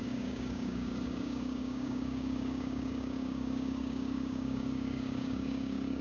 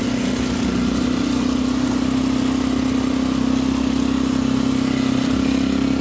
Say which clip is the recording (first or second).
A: second